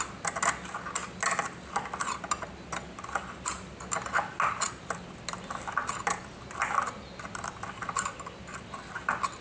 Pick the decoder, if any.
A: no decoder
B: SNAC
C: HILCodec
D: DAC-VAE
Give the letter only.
A